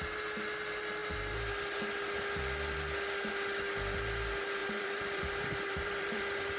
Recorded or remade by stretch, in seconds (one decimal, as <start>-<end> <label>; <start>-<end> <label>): 0.0-4.6 recorded; 4.6-6.6 remade